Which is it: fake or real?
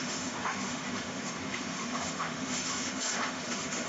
fake